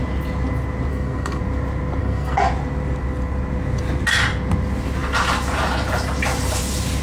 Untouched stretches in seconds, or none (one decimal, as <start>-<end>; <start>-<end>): 0.0-0.9; 1.4-2.0; 2.5-7.0